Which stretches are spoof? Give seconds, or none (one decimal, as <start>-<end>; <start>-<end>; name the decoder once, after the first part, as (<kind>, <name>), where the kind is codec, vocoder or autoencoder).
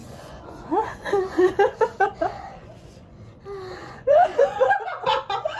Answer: 0.0-3.4 (vocoder, Vocos); 3.8-5.6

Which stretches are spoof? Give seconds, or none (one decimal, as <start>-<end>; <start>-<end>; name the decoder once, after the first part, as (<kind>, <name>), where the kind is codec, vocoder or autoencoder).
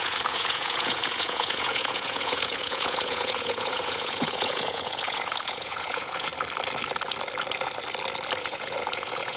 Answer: 0.0-6.3 (vocoder, Vocos); 8.4-9.4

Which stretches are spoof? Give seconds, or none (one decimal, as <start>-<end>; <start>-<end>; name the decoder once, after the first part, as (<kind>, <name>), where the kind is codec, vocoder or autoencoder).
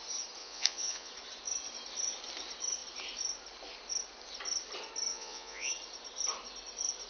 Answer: 0.4-1.1 (vocoder, Vocos); 5.1-5.7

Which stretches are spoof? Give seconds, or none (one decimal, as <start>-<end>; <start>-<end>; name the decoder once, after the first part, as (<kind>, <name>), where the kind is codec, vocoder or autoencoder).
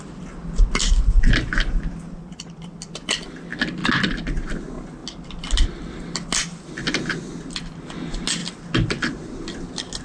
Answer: none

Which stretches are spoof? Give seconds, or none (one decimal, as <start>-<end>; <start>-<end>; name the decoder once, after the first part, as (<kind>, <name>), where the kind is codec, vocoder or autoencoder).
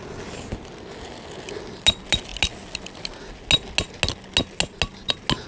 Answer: none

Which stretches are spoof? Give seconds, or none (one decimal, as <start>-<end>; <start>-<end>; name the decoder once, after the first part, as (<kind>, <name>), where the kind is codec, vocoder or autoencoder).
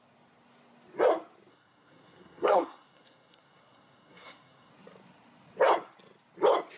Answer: 1.5-4.7 (codec, SNAC)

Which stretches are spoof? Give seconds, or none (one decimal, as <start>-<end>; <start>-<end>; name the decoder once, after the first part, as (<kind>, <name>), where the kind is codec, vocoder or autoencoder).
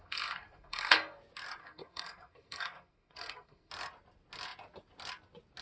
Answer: 0.0-1.2 (codec, SNAC); 1.6-3.7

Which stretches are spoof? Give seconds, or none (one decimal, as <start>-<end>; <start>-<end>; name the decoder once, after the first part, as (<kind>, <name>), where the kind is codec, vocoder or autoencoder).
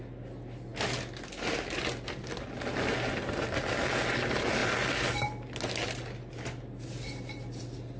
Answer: none